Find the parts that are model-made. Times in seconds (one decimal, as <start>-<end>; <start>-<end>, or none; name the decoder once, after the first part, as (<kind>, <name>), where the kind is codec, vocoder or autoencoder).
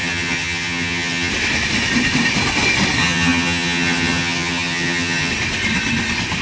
0.0-1.3 (vocoder, HiFi-GAN); 3.0-5.3